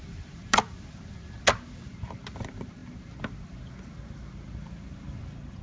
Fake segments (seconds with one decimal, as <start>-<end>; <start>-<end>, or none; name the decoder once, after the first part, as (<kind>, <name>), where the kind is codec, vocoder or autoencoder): none